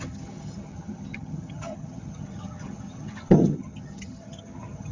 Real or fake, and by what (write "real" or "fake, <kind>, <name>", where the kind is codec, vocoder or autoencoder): fake, vocoder, HiFi-GAN